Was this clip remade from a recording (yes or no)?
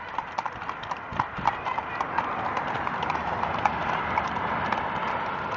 no